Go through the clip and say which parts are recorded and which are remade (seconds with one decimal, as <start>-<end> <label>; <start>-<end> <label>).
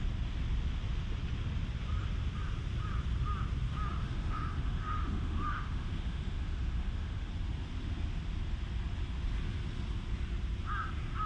0.0-4.0 recorded; 4.0-7.3 remade; 7.3-11.3 recorded